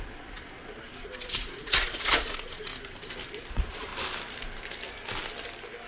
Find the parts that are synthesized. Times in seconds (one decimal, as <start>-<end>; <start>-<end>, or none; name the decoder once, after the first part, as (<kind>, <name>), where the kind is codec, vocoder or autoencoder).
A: 0.0-2.7 (vocoder, Vocos); 3.5-3.9